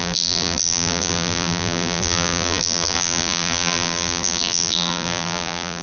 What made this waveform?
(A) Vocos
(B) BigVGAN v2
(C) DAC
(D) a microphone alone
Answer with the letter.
B